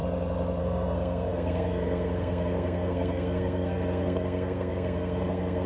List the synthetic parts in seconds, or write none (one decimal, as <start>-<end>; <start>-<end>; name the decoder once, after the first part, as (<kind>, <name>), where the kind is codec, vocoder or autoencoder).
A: 0.6-5.7 (codec, SNAC)